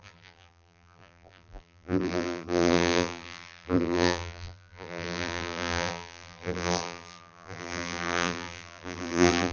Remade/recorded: remade